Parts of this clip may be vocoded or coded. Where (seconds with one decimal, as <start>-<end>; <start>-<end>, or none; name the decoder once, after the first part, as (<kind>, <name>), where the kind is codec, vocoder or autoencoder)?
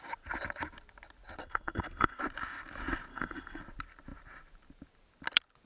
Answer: 1.4-2.2 (codec, SNAC); 3.1-3.6